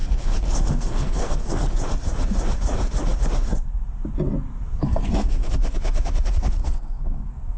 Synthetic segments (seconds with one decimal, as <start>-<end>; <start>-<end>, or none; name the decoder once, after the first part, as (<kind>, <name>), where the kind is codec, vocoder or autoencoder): 0.0-1.8 (codec, SNAC); 4.9-5.5; 6.6-7.6